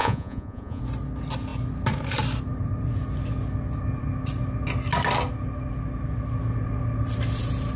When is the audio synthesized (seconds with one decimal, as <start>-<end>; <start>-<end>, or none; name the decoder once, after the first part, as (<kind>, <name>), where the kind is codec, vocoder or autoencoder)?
0.0-0.8 (vocoder, Vocos)